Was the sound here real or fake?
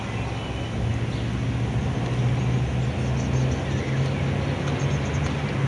real